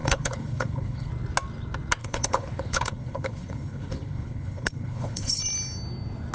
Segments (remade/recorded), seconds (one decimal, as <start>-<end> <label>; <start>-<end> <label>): 0.0-1.1 remade; 1.1-2.0 recorded; 2.0-5.4 remade; 5.4-6.3 recorded